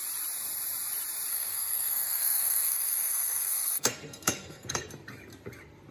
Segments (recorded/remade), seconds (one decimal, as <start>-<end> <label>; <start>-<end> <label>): 0.0-1.3 recorded; 1.3-4.8 remade; 4.8-5.9 recorded

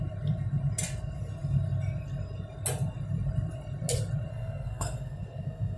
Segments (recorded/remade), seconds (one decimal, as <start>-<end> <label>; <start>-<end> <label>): 0.0-4.3 recorded; 4.3-5.8 remade

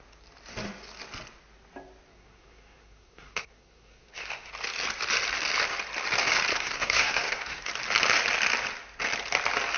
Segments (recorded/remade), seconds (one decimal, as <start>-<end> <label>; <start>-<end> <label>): 0.0-2.1 recorded; 2.1-4.5 remade; 4.5-6.5 recorded; 6.5-7.7 remade; 7.7-9.8 recorded

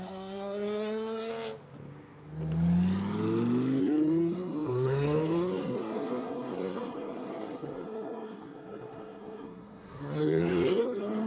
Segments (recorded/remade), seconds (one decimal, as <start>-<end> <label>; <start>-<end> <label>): 0.0-1.3 remade; 1.3-3.8 recorded; 3.8-11.3 remade

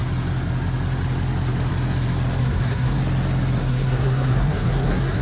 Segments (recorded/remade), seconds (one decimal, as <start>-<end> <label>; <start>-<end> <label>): 0.0-2.4 recorded; 2.4-3.0 remade; 3.0-3.6 recorded; 3.6-5.2 remade

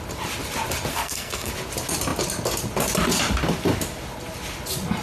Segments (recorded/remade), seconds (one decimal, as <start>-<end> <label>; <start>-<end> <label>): 0.0-0.9 recorded; 0.9-1.5 remade; 1.5-5.0 recorded

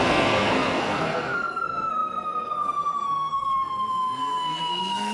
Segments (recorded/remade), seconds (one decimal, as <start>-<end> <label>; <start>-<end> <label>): 0.0-5.1 remade